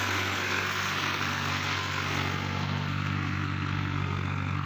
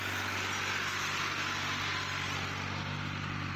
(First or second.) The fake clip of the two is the first